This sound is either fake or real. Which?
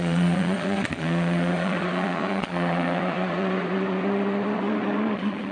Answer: fake